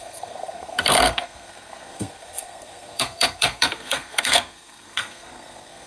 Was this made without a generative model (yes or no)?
no